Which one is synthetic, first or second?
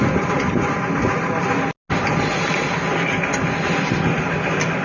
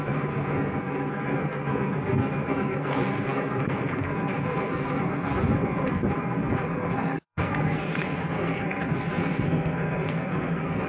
second